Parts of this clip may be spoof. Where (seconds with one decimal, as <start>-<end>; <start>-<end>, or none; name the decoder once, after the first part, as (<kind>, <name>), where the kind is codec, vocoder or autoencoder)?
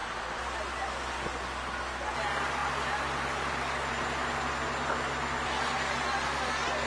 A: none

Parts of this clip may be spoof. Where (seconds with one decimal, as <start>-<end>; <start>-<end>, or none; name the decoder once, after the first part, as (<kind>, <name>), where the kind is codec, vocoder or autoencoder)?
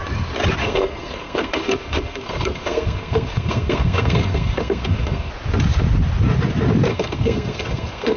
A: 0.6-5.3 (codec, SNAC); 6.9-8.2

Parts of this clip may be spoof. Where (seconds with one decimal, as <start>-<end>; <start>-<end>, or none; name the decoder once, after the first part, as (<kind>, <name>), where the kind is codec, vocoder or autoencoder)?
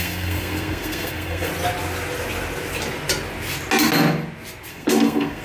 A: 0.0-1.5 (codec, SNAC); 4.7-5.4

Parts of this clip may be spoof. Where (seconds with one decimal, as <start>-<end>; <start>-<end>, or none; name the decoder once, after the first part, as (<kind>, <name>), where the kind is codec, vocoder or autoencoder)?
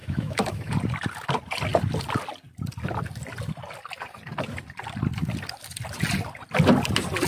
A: 0.0-0.7 (autoencoder, DAC-VAE)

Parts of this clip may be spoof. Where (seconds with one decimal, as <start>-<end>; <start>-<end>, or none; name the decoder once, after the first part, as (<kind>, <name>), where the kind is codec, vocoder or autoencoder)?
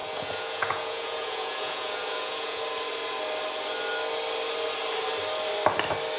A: 0.0-2.6 (vocoder, Vocos)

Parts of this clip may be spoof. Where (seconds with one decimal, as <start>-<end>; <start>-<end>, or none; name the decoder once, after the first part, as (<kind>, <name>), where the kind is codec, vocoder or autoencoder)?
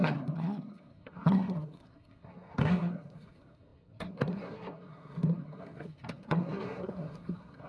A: 0.0-7.7 (codec, SNAC)